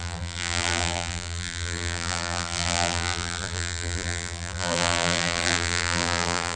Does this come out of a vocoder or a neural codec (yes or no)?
yes